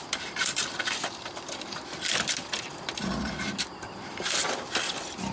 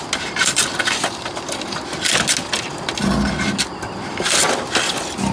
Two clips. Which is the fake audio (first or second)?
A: first